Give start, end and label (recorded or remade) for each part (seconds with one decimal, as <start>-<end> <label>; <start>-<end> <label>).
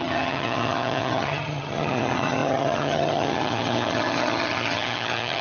0.0-5.4 remade